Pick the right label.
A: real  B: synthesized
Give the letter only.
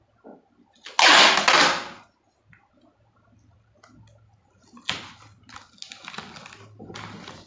A